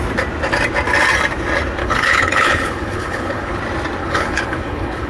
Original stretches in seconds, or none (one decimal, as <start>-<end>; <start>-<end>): 0.0-1.8; 3.6-4.0